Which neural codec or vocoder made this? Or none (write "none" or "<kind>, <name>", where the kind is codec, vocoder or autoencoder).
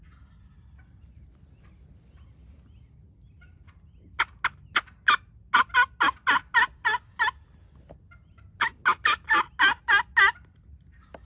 none